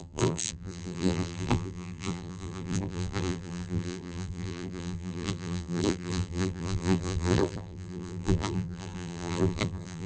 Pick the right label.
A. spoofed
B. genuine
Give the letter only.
A